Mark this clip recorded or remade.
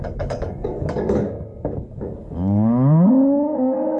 remade